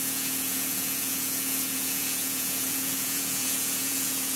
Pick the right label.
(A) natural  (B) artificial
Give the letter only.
B